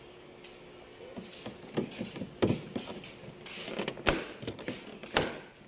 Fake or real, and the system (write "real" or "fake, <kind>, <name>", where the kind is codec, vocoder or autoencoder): real